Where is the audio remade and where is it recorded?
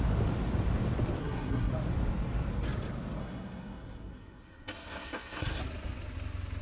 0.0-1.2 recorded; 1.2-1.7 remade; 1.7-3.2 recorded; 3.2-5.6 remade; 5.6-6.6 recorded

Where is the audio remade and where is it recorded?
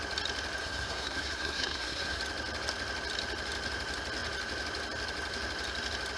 0.0-0.6 recorded; 0.6-2.2 remade; 2.2-6.2 recorded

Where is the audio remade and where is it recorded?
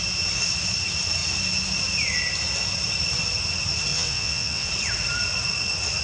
0.0-3.9 recorded; 3.9-4.7 remade; 4.7-6.0 recorded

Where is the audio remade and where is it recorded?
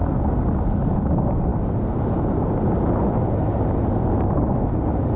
0.0-5.2 recorded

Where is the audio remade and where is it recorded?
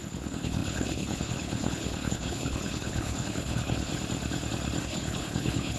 0.0-3.9 remade; 3.9-4.8 recorded; 4.8-5.8 remade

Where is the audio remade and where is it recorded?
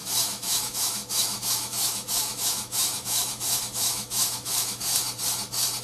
0.0-4.9 remade; 4.9-5.8 recorded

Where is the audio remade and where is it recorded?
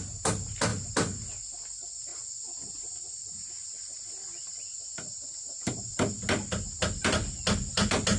0.0-8.2 recorded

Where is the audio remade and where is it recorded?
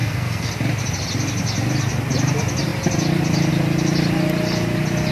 0.0-0.5 remade; 0.5-5.1 recorded